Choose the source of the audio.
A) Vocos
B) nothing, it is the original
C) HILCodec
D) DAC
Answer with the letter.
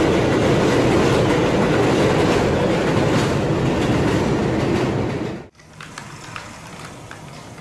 B